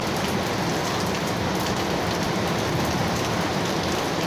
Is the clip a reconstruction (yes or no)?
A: yes